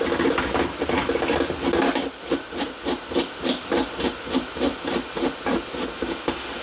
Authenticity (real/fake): real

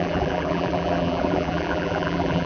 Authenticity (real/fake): fake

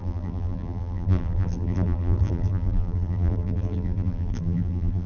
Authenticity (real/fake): fake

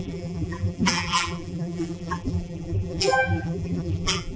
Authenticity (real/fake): fake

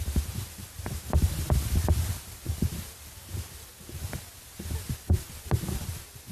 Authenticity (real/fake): real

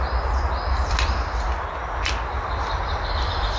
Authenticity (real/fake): real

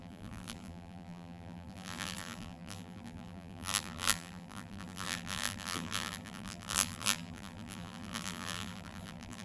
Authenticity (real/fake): fake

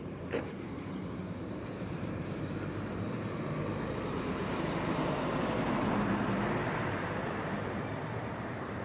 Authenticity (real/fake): fake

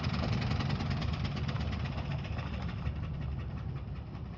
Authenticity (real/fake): fake